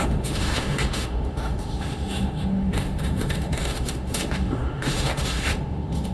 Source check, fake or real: fake